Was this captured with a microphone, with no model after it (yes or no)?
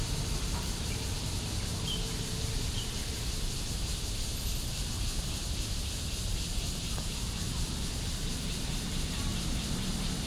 no